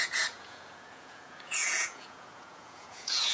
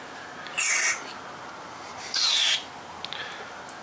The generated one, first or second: first